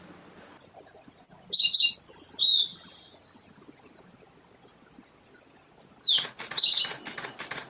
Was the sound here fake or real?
real